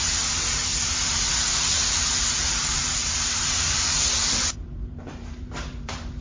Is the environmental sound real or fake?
fake